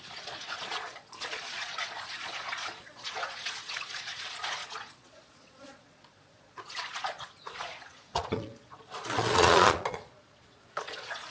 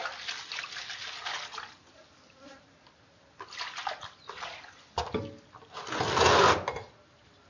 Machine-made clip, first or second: first